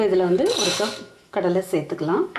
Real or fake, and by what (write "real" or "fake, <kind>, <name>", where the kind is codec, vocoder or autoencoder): fake, autoencoder, DAC-VAE